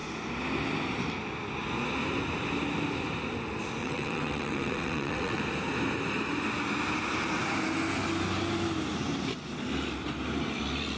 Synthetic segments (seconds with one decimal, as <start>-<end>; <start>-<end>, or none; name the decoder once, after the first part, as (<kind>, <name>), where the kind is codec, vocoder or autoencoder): 3.8-5.4 (vocoder, WaveNeXt)